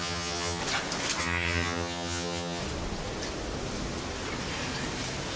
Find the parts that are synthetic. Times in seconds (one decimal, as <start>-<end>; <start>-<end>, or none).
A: 0.0-0.6; 1.2-2.6